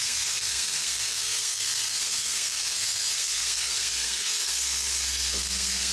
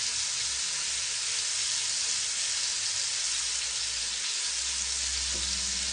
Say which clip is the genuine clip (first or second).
second